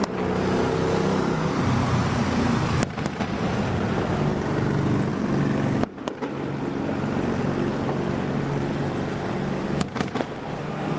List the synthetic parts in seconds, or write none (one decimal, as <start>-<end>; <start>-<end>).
10.2-11.0